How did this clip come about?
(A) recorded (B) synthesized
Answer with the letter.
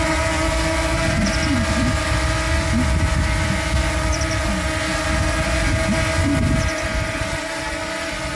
A